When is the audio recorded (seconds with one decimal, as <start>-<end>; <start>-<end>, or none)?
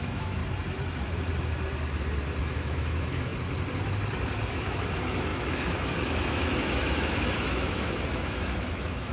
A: 0.4-2.4; 3.3-4.5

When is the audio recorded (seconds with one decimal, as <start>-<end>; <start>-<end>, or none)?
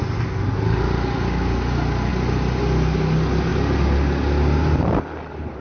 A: 0.0-5.6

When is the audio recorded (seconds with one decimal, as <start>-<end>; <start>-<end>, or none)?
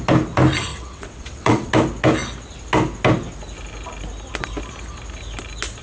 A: 0.0-0.7; 1.7-5.8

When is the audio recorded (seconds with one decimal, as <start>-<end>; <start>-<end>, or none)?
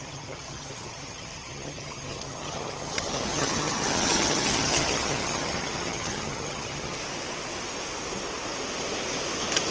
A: 7.0-9.7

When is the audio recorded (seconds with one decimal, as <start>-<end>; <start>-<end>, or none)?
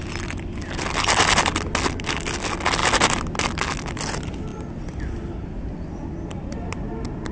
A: 0.0-7.3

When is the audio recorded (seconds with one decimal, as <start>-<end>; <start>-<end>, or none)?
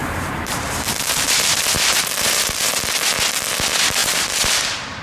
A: 2.7-4.0